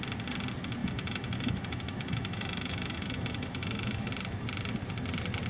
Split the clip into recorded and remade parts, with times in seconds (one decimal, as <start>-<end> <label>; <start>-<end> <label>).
0.0-0.8 recorded; 0.8-4.1 remade; 4.1-5.5 recorded